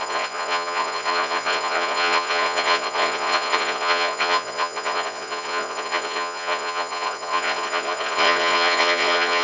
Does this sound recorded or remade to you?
remade